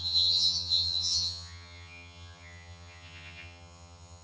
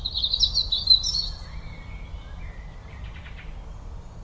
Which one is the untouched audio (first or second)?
second